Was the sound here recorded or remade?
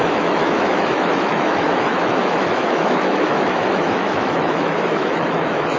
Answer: remade